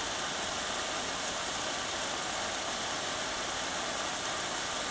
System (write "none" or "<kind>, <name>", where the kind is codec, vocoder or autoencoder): none